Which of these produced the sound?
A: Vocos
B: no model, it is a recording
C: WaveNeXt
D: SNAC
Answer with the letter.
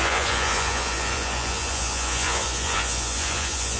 A